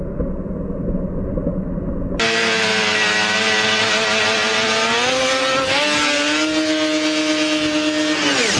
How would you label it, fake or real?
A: real